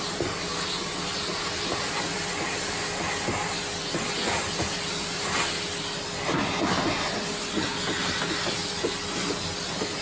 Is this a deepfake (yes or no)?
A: no